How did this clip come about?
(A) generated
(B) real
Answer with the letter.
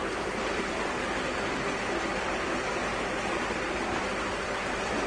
B